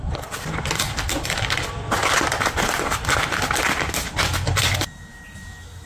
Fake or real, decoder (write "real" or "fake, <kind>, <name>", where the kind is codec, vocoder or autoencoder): real